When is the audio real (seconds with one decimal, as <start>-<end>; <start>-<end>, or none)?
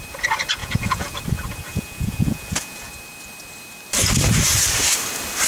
0.0-0.6; 1.2-1.7; 2.9-5.5